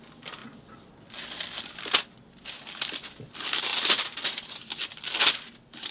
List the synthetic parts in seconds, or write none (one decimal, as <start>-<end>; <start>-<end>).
none